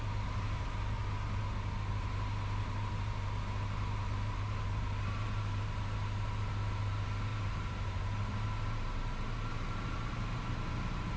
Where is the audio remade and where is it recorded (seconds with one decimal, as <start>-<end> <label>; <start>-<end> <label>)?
0.0-1.0 remade; 1.0-1.9 recorded; 1.9-11.2 remade